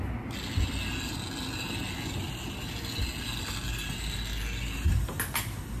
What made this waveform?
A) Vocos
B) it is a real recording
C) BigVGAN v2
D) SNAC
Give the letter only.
B